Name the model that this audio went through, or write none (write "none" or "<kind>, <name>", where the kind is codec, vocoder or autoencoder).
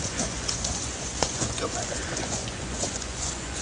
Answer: vocoder, Vocos